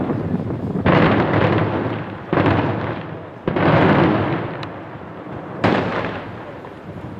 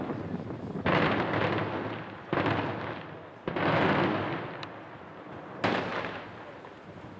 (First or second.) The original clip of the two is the second